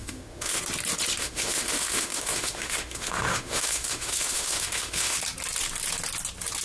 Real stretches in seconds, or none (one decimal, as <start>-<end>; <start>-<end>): 0.6-1.2; 5.2-6.6

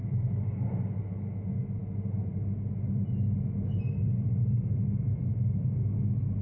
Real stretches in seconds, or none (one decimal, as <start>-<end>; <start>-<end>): 0.0-6.4

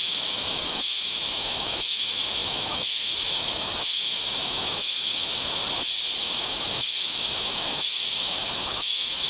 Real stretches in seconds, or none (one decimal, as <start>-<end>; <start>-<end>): 5.6-6.2

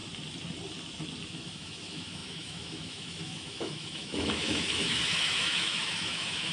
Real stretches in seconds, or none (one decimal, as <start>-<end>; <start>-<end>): 0.0-1.3

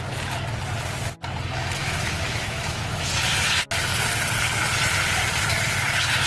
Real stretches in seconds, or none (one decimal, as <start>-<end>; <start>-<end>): 0.0-1.8; 3.1-6.3

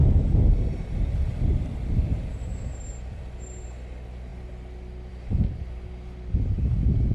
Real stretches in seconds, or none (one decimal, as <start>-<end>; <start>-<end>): 0.0-7.1

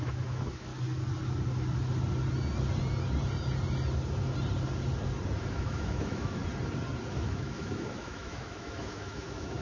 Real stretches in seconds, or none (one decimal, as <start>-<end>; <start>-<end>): 0.7-5.5; 6.4-7.1

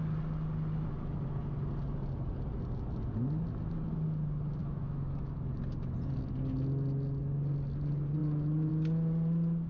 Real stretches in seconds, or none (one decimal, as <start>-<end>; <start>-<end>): 0.0-4.6; 5.3-9.7